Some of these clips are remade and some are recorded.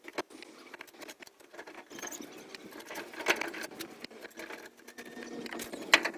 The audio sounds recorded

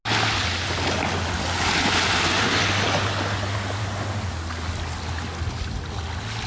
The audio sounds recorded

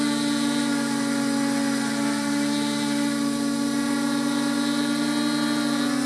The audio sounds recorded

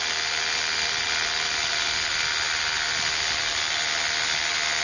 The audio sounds recorded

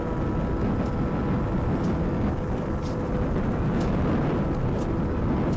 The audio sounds recorded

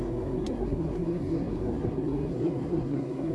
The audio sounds remade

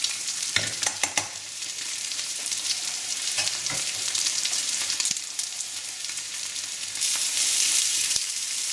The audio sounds remade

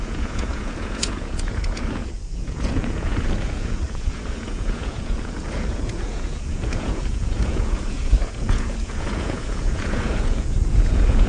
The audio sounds remade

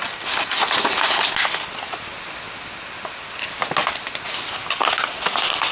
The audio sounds recorded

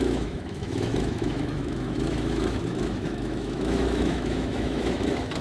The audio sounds remade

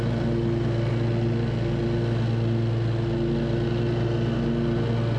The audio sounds recorded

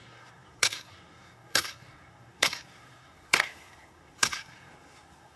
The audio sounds remade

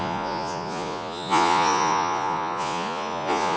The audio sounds remade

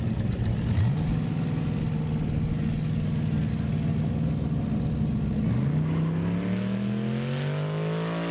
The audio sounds recorded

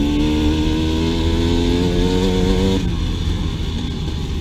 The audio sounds recorded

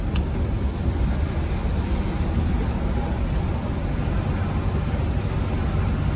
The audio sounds recorded